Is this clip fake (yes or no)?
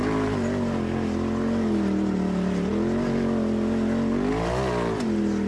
no